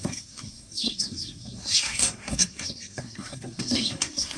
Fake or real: fake